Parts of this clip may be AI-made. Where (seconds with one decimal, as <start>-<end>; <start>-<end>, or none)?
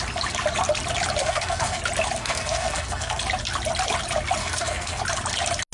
1.2-1.8; 2.2-3.2; 4.4-5.0